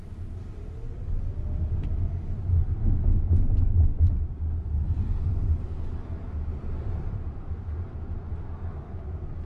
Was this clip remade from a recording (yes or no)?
no